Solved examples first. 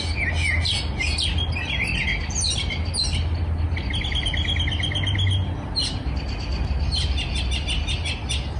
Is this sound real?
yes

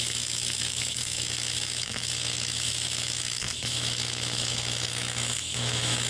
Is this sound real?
no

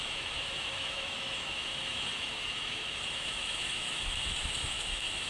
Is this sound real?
no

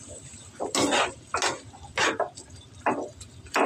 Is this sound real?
yes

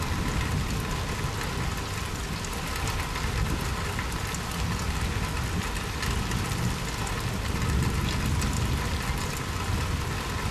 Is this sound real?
yes